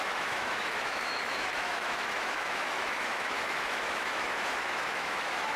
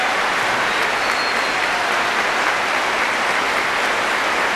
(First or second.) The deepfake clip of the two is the first